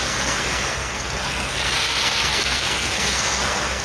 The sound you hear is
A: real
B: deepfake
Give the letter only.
B